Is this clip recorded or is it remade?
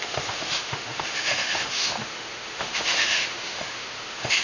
remade